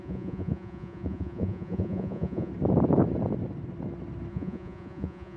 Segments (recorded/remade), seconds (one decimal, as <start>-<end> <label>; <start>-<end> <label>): 0.0-2.5 remade; 2.5-4.3 recorded; 4.3-5.4 remade

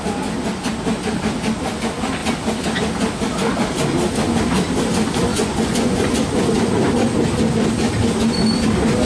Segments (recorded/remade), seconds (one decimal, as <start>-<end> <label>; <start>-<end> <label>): 0.0-5.3 recorded; 5.3-6.1 remade; 6.1-9.1 recorded

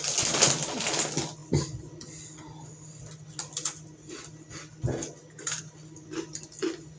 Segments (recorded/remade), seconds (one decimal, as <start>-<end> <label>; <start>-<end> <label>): 0.0-7.0 recorded

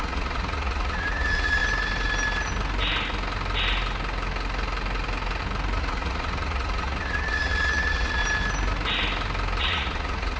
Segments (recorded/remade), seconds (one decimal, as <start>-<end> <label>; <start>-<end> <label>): 0.0-1.6 remade; 1.6-5.8 recorded; 5.8-8.2 remade; 8.2-9.6 recorded; 9.6-10.4 remade